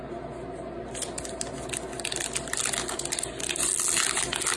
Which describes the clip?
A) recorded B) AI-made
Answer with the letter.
A